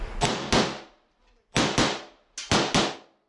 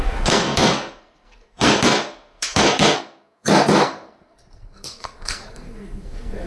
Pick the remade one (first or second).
second